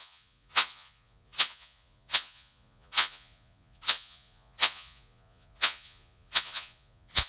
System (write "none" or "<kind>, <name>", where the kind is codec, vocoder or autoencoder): vocoder, Vocos